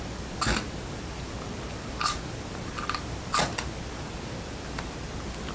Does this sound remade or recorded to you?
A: recorded